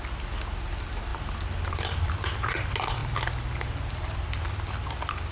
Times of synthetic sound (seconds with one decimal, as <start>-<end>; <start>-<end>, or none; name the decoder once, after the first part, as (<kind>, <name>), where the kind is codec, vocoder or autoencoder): none